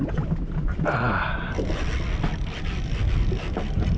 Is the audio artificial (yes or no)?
no